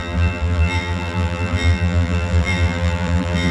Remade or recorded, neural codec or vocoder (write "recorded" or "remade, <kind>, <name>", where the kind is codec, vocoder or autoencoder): remade, vocoder, BigVGAN v2